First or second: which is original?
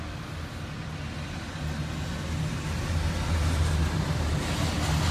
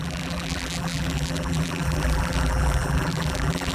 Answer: first